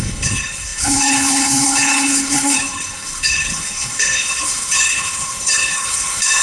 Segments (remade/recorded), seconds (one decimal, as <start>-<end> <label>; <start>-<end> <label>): 0.0-6.4 remade